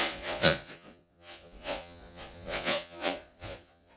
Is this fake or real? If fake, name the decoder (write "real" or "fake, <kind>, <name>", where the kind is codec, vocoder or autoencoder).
fake, vocoder, Vocos